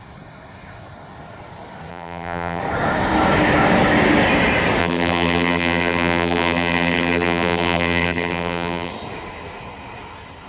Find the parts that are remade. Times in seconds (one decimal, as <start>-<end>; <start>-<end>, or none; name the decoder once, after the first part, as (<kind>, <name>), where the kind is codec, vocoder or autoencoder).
1.9-2.6 (vocoder, BigVGAN v2); 4.8-8.9